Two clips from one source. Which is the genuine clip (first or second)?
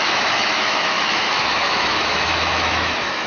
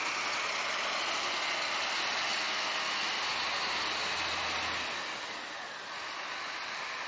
second